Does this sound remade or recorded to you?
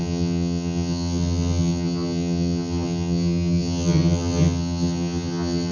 remade